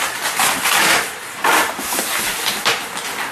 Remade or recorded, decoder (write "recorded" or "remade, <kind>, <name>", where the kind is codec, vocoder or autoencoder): recorded